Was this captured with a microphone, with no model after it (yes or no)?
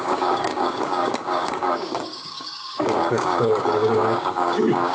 no